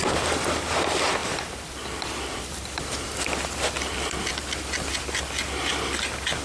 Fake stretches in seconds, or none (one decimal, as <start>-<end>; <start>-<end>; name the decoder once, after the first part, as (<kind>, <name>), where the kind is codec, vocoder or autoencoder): 0.0-6.4 (vocoder, BigVGAN v2)